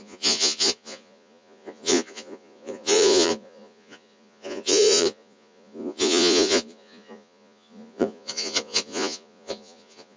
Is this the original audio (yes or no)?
no